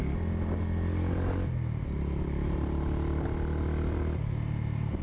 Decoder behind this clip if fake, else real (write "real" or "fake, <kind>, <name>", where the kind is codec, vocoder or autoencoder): real